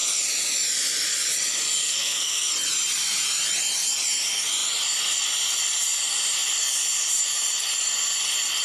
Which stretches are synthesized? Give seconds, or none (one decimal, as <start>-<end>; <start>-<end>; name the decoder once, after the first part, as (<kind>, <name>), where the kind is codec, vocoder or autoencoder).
1.8-2.5 (codec, SNAC)